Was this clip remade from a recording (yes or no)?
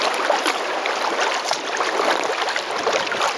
no